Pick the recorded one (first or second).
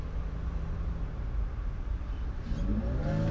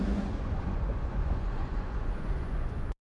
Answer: first